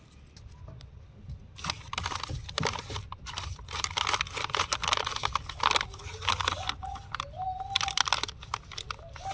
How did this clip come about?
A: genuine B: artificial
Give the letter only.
A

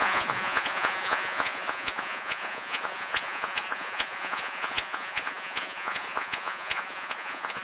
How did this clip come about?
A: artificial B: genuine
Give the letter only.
A